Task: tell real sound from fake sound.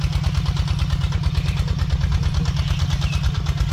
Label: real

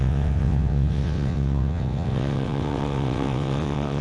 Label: fake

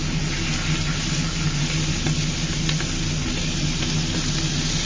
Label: real